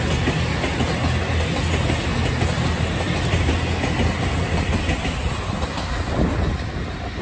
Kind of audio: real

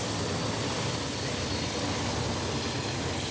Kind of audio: real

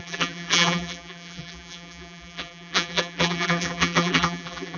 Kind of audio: fake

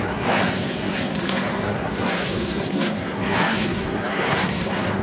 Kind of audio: fake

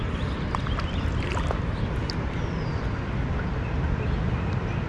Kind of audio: real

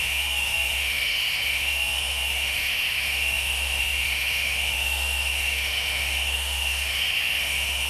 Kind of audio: fake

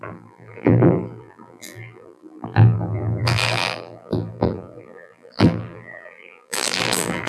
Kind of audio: fake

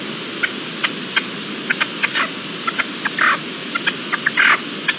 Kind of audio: real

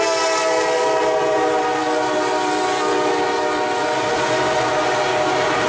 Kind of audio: real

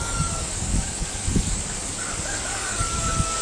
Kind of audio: fake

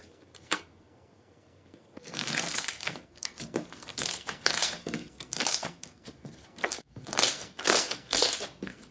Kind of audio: fake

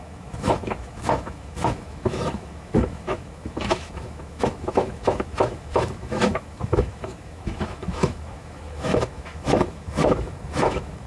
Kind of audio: fake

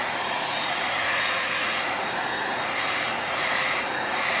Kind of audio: fake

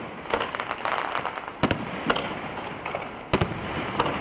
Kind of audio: real